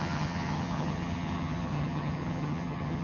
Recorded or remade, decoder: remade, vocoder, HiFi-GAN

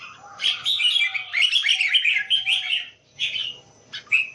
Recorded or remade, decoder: recorded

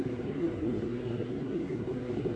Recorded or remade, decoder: remade, codec, SNAC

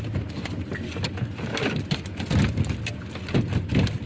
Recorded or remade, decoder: recorded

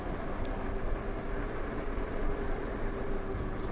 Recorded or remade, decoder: recorded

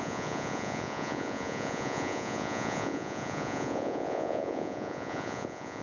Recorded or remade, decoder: remade, vocoder, Vocos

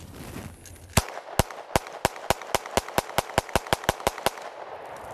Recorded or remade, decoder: recorded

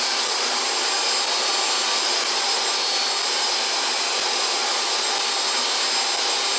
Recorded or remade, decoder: recorded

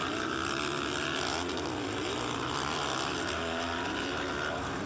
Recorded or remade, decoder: recorded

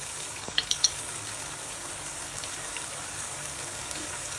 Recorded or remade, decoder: remade, codec, DAC